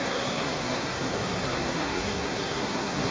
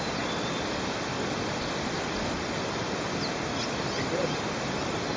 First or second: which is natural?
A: second